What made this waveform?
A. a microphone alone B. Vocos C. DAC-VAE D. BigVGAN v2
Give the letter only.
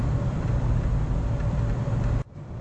D